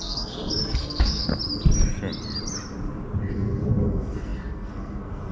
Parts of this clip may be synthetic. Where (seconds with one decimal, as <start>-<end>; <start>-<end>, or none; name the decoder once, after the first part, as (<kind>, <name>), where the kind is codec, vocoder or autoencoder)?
0.0-1.3 (codec, SNAC); 3.3-5.3